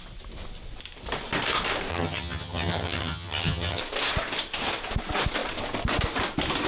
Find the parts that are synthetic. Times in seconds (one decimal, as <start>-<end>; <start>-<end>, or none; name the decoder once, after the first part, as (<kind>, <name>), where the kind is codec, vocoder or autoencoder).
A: 1.9-3.8 (vocoder, HiFi-GAN)